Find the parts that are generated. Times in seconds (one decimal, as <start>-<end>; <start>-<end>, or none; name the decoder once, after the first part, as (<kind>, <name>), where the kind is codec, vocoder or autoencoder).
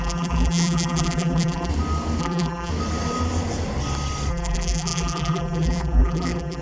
0.0-1.7 (vocoder, BigVGAN v2); 2.2-2.7; 4.3-6.6